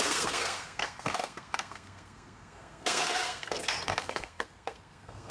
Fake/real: fake